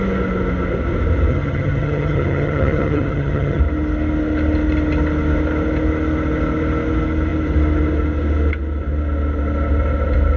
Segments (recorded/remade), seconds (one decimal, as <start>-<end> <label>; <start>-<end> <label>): 0.0-1.3 recorded; 1.3-3.6 remade; 3.6-10.4 recorded